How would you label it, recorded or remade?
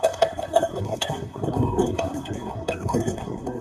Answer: remade